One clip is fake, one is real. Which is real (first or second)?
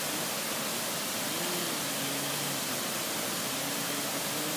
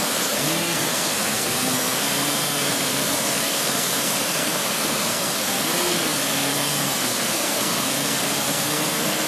first